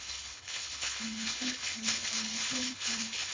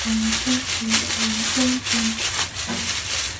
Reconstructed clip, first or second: first